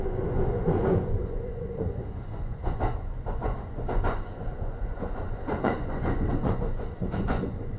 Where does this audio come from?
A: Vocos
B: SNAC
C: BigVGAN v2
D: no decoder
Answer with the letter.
A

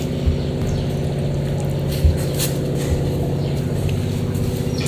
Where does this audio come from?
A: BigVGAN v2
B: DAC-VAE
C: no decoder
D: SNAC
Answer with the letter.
C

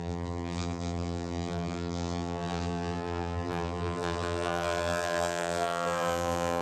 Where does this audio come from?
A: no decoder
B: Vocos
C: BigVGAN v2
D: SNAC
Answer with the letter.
C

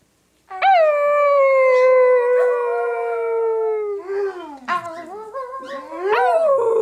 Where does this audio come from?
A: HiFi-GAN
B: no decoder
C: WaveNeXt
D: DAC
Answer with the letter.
B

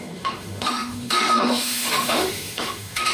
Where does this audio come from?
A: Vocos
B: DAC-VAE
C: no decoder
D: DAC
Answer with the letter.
B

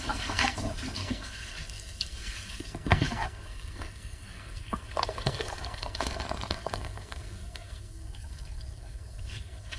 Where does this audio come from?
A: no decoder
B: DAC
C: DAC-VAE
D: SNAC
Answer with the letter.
D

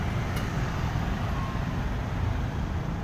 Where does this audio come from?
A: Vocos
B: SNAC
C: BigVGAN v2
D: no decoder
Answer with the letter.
D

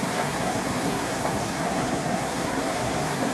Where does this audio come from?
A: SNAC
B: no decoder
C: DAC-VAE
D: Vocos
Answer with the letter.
A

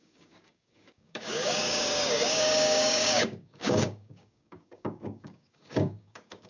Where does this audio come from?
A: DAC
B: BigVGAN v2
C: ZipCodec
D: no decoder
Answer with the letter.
A